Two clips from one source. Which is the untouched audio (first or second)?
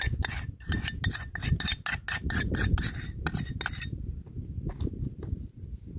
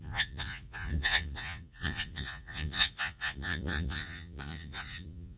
first